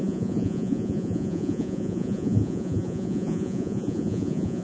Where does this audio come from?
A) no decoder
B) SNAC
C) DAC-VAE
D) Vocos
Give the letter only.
D